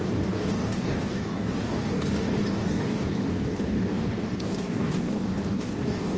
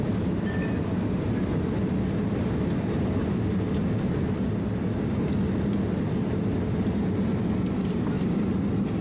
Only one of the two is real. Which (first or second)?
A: second